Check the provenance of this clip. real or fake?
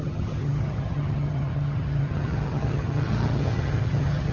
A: fake